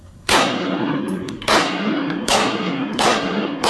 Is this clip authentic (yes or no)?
no